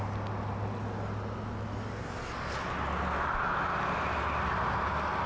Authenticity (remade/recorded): recorded